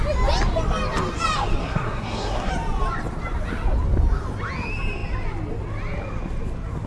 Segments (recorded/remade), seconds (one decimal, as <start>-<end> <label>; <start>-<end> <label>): 0.0-1.6 recorded; 1.6-2.5 remade; 2.5-6.9 recorded